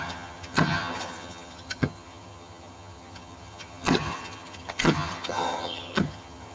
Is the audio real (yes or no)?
no